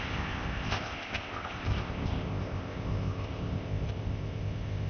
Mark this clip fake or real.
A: fake